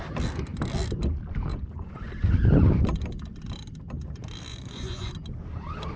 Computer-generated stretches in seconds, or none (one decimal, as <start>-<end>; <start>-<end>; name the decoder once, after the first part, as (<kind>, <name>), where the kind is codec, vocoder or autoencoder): 1.5-2.1 (vocoder, Vocos); 4.5-5.1